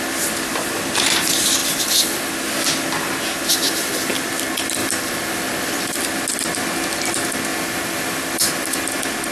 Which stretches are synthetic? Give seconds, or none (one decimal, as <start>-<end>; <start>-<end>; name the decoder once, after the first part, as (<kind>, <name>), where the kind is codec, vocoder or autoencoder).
1.6-2.3 (vocoder, BigVGAN v2); 3.5-4.1; 4.8-6.1; 7.5-8.8